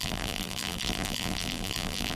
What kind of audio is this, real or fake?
fake